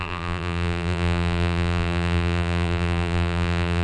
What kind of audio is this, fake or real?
fake